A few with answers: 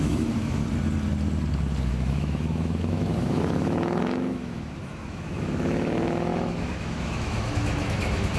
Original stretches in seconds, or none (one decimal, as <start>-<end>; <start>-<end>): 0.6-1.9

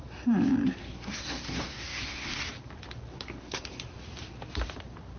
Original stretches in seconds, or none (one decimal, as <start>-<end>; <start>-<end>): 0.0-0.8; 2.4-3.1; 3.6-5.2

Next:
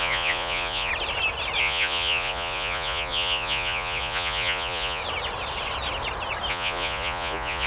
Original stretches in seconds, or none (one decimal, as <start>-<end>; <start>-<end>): 0.9-1.6; 5.0-6.5